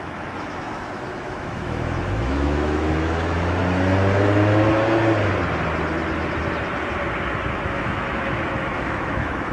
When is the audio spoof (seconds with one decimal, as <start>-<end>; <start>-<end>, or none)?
0.0-3.6; 7.5-9.5